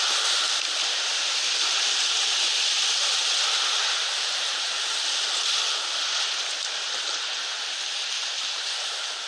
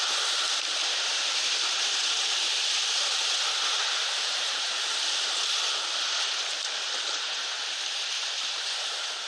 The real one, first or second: first